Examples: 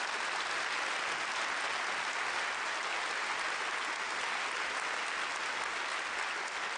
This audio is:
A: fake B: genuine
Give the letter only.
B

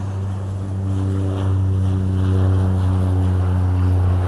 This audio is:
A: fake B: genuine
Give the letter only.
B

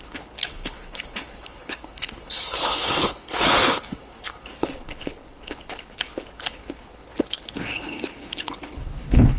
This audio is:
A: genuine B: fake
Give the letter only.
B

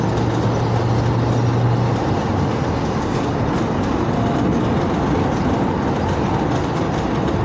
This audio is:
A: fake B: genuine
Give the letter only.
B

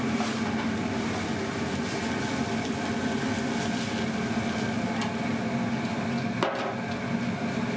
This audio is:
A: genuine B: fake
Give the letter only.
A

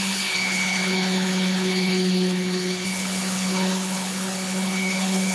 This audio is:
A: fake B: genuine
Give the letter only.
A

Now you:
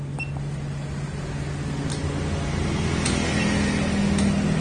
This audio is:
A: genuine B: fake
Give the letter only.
A